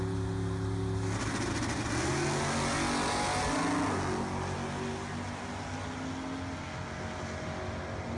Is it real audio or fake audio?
real